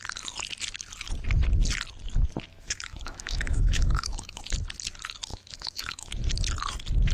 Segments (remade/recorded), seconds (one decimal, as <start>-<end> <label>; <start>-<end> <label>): 0.0-2.5 recorded; 2.5-4.4 remade; 4.4-5.3 recorded; 5.3-6.1 remade; 6.1-7.1 recorded